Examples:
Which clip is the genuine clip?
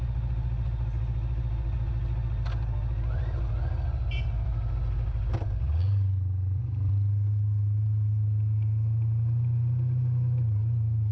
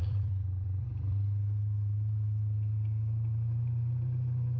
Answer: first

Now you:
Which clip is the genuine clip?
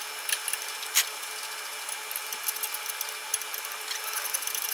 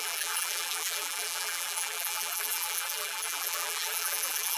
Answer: first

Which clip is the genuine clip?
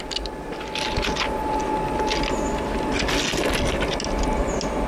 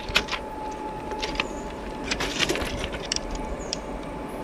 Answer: first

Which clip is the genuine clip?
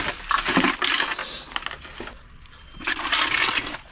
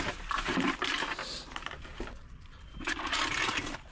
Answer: first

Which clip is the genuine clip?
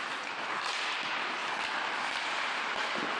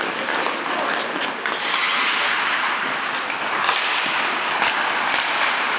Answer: second